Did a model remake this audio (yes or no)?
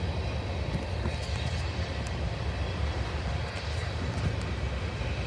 no